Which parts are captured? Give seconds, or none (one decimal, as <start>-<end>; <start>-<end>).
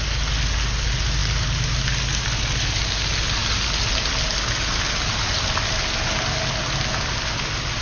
0.0-7.8